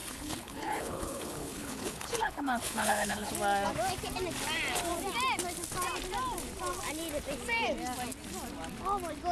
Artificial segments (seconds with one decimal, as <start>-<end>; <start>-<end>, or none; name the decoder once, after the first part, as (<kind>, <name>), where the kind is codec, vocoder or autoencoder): 0.0-3.3 (codec, HILCodec)